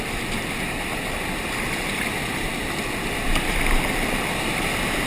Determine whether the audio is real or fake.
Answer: real